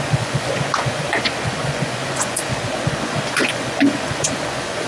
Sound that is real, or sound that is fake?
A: fake